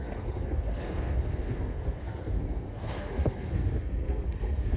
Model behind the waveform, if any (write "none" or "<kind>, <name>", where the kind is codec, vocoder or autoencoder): codec, SNAC